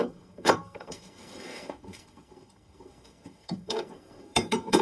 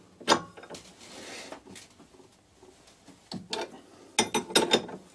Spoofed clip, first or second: first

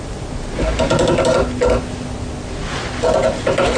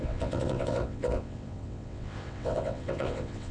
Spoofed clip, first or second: second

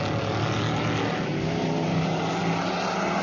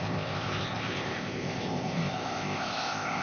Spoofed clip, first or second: second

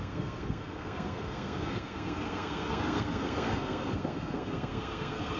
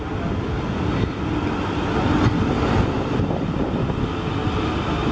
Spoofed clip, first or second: first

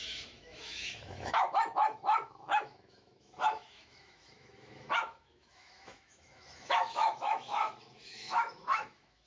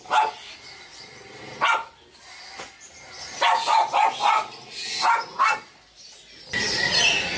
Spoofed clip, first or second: first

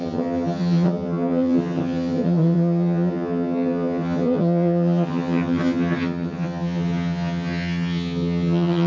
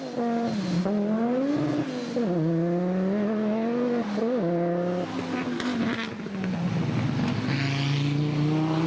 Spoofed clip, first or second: first